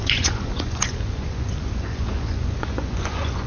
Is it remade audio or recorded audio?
remade